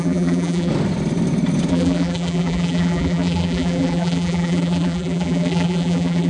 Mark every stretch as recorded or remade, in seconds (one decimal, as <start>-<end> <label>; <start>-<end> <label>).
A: 0.0-0.7 remade; 0.7-1.7 recorded; 1.7-6.3 remade